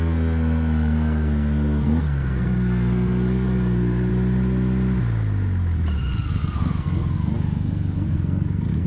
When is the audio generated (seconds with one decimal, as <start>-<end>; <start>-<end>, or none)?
0.0-4.1; 6.1-8.9

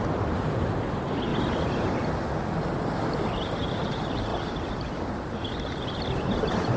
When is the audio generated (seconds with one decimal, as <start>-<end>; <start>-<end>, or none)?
0.0-1.3; 3.4-4.3

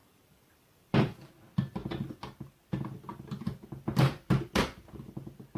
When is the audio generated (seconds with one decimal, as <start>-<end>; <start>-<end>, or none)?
0.0-1.3

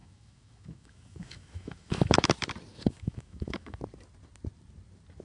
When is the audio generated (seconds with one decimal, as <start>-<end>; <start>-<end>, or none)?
0.0-2.3; 2.7-3.8

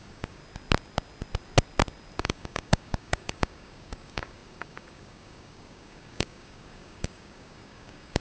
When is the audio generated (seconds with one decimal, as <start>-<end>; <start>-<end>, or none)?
0.0-0.4; 2.2-8.2

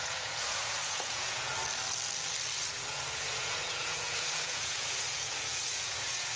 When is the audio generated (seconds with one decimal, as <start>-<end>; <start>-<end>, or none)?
0.0-1.5; 2.7-6.4

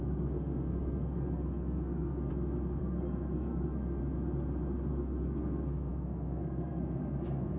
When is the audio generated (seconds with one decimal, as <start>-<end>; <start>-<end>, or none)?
0.0-2.3; 2.8-4.0; 4.9-7.6